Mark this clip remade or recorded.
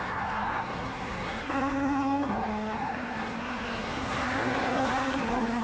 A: remade